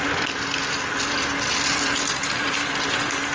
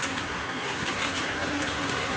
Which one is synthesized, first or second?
second